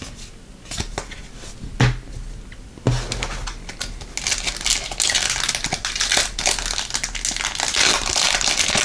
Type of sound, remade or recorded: recorded